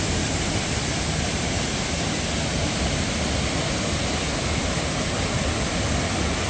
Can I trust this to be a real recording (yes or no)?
yes